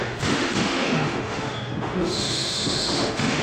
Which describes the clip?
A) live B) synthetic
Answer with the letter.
B